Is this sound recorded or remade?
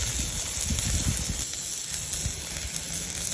recorded